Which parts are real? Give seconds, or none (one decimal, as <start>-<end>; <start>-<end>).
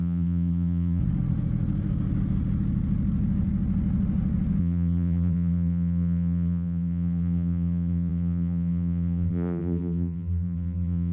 1.0-4.6